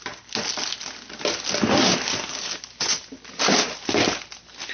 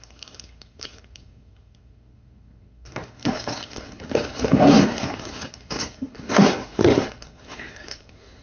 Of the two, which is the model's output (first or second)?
second